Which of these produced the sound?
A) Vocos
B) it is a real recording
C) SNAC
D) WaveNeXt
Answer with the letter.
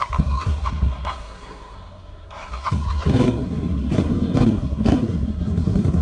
C